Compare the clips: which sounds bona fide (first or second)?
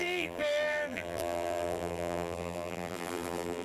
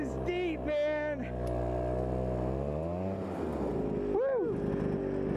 second